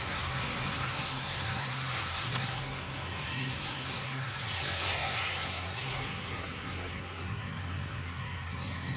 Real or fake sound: fake